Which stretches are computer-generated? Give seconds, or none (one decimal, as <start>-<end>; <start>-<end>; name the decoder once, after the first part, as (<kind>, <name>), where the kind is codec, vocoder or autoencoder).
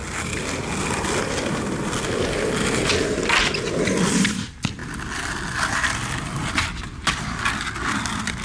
none